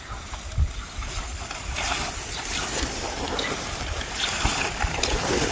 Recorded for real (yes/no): yes